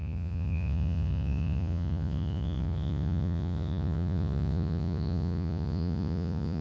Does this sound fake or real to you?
fake